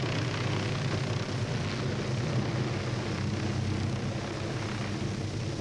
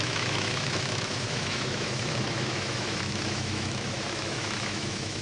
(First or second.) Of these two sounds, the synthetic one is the second